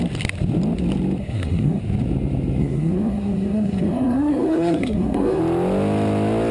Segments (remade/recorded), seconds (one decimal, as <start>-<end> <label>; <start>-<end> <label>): 0.0-1.2 recorded; 1.2-1.8 remade; 1.8-2.6 recorded; 2.6-5.4 remade; 5.4-6.5 recorded